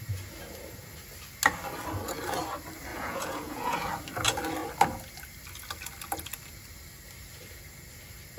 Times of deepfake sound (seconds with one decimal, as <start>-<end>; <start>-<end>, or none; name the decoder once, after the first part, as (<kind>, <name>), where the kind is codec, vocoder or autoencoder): 2.9-3.9 (vocoder, Vocos)